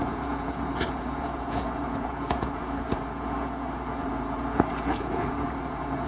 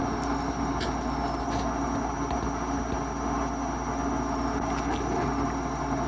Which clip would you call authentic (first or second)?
second